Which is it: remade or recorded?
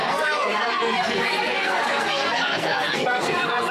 remade